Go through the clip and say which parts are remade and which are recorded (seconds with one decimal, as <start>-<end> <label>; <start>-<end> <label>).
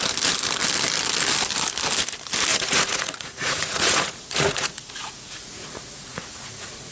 0.0-2.5 recorded; 2.5-6.9 remade